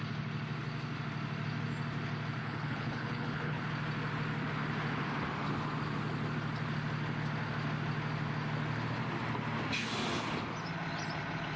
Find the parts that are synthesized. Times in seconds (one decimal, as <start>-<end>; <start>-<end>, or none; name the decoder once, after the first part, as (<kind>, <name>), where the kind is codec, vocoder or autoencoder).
2.4-3.6 (codec, HILCodec)